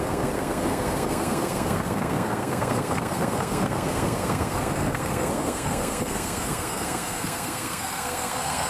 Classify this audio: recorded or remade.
remade